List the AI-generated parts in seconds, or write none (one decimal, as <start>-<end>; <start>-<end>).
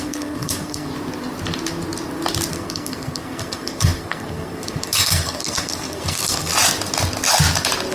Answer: 0.0-0.9; 2.5-6.5